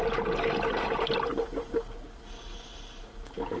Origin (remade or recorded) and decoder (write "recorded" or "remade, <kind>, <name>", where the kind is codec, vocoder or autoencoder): recorded